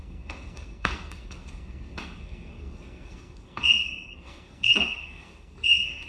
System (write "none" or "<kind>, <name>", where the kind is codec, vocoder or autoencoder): codec, SNAC